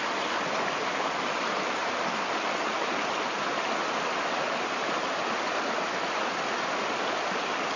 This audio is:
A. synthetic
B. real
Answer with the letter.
B